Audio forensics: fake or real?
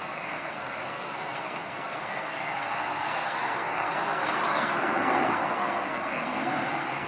fake